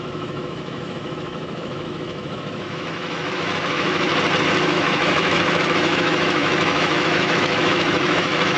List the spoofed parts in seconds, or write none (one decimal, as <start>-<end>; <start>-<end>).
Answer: 0.0-4.1; 4.6-8.6